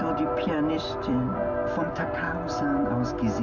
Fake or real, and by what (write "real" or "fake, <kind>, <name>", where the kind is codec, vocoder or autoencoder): real